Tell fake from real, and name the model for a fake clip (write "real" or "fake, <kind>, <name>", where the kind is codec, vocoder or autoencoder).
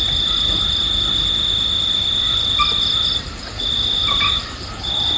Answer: real